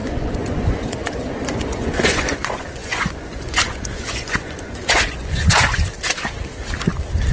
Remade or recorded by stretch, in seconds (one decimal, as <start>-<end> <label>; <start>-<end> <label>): 0.0-5.9 remade; 5.9-7.3 recorded

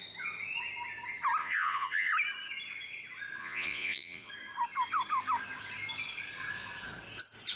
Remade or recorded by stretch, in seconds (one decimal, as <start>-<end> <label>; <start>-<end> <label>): 0.0-1.4 recorded; 1.4-2.1 remade; 2.1-3.4 recorded; 3.4-4.3 remade; 4.3-7.6 recorded